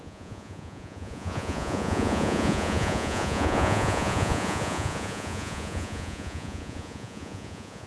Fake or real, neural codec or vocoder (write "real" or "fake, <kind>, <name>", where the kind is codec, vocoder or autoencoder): fake, vocoder, Vocos